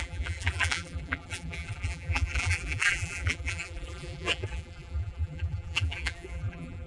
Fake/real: fake